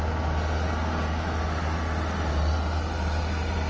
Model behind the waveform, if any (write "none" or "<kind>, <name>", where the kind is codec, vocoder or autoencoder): none